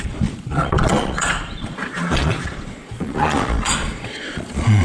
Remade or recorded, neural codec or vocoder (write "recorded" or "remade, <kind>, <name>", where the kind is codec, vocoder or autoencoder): remade, vocoder, Vocos